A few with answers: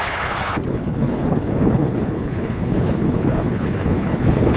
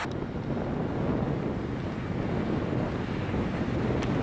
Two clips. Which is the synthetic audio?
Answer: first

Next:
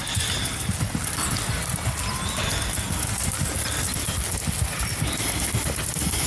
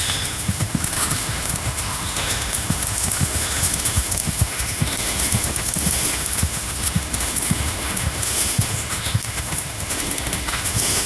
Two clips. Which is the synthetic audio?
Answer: second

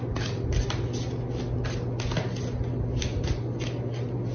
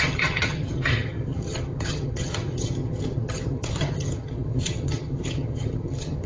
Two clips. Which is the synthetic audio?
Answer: second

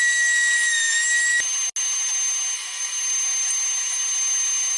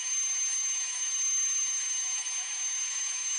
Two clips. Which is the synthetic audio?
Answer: second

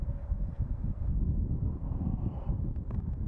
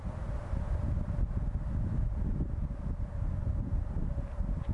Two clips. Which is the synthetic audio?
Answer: first